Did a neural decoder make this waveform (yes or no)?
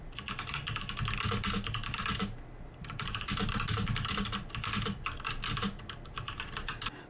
no